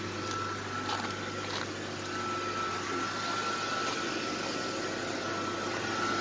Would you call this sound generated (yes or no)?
no